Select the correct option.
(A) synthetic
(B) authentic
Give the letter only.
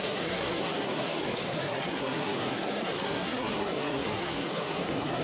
A